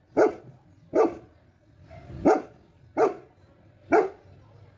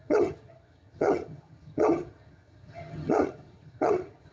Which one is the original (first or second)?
first